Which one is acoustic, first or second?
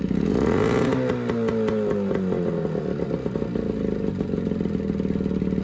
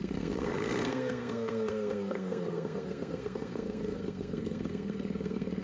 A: first